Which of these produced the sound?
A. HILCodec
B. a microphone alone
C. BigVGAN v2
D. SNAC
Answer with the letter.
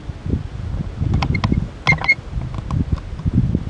B